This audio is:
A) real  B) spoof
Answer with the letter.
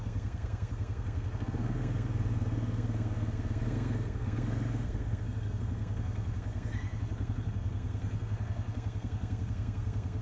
B